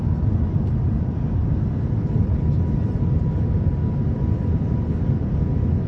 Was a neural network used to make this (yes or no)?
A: no